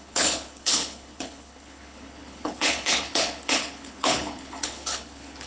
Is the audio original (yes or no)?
no